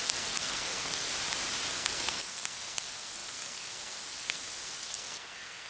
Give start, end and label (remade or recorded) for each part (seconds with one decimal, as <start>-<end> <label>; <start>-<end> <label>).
0.0-1.1 remade; 1.1-1.7 recorded; 1.7-5.7 remade